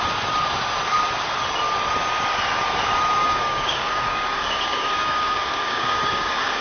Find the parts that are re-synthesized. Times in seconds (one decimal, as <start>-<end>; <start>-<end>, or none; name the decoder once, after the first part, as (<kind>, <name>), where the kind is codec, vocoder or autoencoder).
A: 3.2-6.6 (codec, DAC)